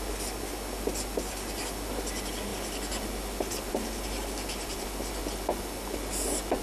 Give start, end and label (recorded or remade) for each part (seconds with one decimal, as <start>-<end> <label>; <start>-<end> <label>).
0.0-6.6 recorded